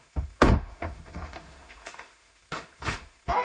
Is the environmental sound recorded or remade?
remade